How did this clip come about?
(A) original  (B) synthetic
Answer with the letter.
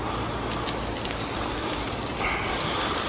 A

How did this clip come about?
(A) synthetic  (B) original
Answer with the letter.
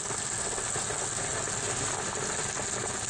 B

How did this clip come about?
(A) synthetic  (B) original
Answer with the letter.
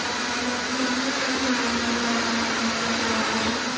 B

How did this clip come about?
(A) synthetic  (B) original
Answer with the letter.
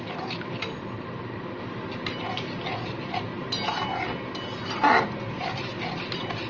B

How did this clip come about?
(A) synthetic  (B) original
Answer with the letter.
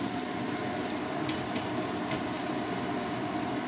A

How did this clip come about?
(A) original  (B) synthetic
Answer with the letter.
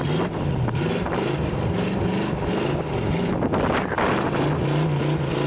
A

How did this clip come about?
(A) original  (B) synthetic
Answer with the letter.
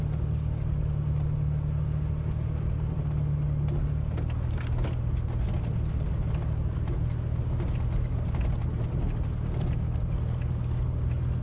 A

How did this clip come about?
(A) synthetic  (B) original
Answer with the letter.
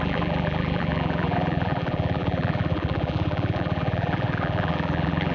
A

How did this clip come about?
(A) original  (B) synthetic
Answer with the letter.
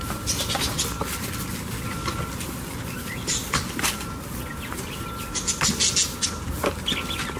A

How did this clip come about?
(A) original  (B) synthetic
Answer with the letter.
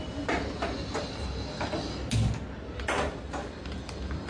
A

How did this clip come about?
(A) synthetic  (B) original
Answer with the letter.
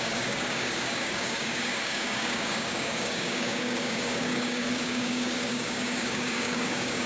A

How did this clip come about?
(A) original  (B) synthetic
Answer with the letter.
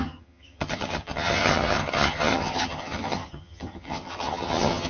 B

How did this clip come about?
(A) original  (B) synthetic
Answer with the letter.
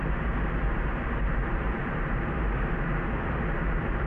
B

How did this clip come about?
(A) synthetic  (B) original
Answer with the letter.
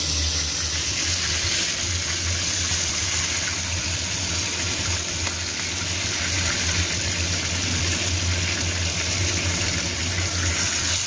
B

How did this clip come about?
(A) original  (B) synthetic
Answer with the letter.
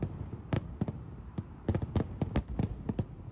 A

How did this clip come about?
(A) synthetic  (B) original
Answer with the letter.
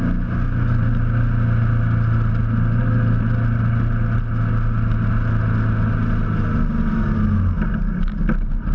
B